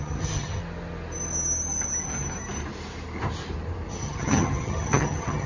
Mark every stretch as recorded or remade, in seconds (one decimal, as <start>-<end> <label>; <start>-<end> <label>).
0.0-0.6 remade; 0.6-3.9 recorded; 3.9-5.5 remade